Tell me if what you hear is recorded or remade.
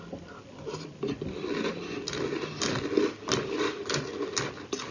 recorded